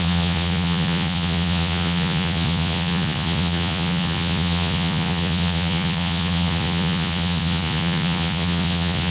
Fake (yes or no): yes